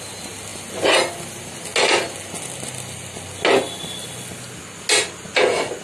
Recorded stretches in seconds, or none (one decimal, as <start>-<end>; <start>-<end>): 0.0-5.8